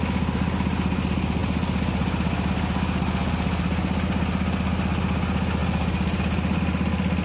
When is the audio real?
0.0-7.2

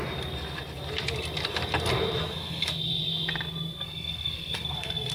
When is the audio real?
0.0-2.2; 2.8-3.7

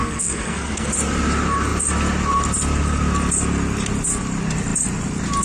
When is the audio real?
0.9-5.4

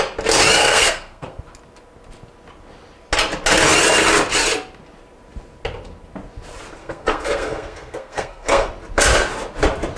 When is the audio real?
0.0-0.6; 1.4-6.8; 8.7-10.0

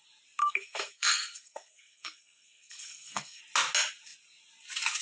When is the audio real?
0.0-0.4; 3.4-5.0